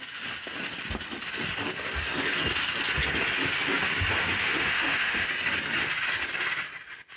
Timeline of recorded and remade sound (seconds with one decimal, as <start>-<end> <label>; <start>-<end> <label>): 0.0-4.2 recorded; 4.2-5.3 remade; 5.3-7.2 recorded